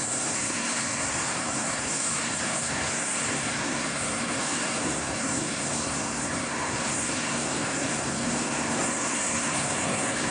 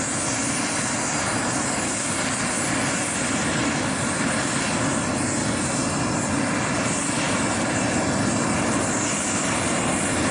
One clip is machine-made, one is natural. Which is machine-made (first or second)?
first